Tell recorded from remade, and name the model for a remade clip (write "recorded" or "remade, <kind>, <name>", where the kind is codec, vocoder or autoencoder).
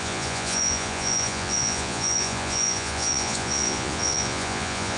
remade, vocoder, Vocos